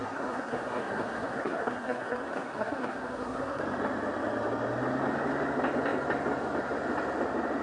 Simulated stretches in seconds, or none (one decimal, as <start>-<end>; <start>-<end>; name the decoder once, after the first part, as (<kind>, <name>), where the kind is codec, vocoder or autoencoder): 0.0-3.6 (codec, SNAC)